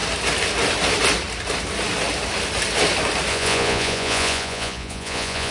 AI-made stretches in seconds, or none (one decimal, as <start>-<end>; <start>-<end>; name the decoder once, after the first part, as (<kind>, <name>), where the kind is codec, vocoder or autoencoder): 3.3-5.5 (vocoder, Vocos)